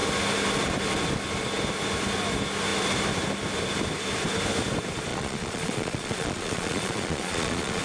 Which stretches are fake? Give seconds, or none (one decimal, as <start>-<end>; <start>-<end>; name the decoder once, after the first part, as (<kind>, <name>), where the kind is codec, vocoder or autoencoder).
5.1-7.8 (vocoder, Vocos)

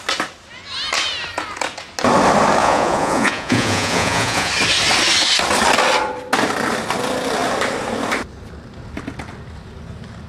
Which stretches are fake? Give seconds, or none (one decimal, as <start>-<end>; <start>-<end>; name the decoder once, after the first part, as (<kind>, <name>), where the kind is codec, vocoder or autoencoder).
2.6-4.5 (vocoder, Vocos)